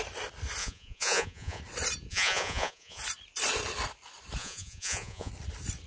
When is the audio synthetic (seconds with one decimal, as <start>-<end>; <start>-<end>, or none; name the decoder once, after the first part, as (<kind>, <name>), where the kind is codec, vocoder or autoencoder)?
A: 0.6-1.6 (vocoder, Vocos); 2.1-3.0; 4.4-5.3